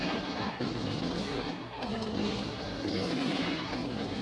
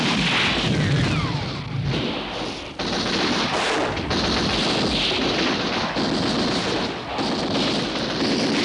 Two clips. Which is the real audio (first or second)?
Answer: second